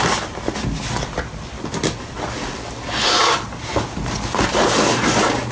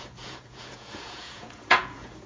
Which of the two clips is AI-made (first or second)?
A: second